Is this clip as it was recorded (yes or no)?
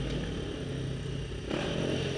yes